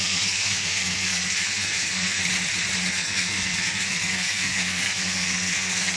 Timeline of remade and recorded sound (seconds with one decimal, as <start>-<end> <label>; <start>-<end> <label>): 0.0-2.2 remade; 2.2-2.9 recorded; 2.9-6.0 remade